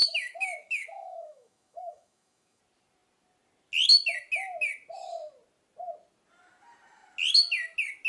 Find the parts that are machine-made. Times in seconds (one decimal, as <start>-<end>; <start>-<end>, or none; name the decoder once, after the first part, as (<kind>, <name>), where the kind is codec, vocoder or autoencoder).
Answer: 0.0-2.6 (autoencoder, DAC-VAE)